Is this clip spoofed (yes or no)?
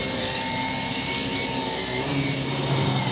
no